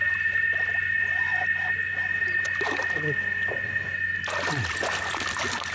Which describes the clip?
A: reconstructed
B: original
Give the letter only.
B